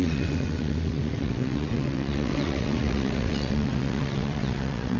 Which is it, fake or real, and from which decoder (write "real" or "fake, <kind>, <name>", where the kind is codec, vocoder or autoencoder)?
fake, vocoder, WaveNeXt